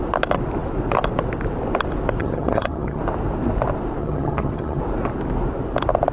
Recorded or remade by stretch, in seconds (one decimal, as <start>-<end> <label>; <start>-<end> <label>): 0.0-2.2 recorded; 2.2-3.0 remade; 3.0-4.0 recorded; 4.0-4.8 remade; 4.8-6.1 recorded

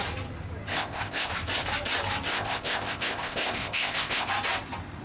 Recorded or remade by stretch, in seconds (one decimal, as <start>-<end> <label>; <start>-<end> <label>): 0.0-0.7 recorded; 0.7-1.3 remade; 1.3-2.3 recorded; 2.3-4.3 remade; 4.3-5.0 recorded

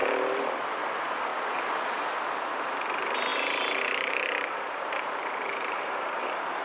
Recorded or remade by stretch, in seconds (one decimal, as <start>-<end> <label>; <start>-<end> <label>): 0.0-0.6 recorded; 0.6-1.3 remade; 1.3-2.4 recorded; 2.4-6.6 remade

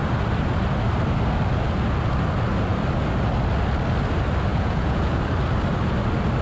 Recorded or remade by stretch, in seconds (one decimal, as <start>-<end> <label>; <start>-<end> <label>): 0.0-4.5 recorded; 4.5-5.2 remade; 5.2-6.4 recorded

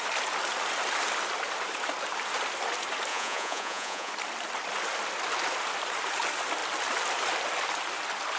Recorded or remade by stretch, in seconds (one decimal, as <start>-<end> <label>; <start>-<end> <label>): 0.0-3.1 recorded; 3.1-4.1 remade; 4.1-8.4 recorded

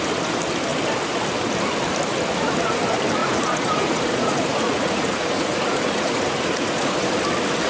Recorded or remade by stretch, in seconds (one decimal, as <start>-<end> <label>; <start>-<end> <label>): 0.0-3.2 recorded; 3.2-7.1 remade; 7.1-7.7 recorded

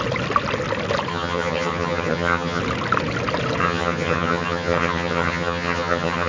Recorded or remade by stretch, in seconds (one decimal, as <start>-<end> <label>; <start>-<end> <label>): 0.0-1.1 recorded; 1.1-2.6 remade; 2.6-3.6 recorded; 3.6-6.3 remade

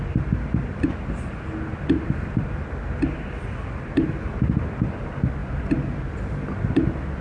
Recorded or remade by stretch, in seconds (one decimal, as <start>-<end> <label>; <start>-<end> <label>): 0.0-7.2 recorded